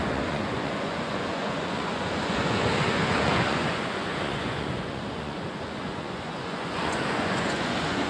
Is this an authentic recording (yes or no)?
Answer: no